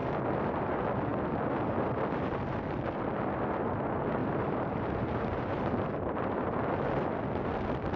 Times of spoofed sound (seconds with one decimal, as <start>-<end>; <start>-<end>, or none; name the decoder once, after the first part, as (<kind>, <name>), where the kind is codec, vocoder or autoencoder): 4.2-6.4 (vocoder, BigVGAN v2)